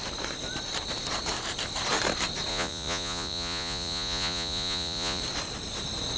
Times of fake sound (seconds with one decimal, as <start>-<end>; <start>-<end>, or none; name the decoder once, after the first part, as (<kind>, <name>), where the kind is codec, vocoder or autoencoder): 2.5-5.2 (vocoder, Vocos)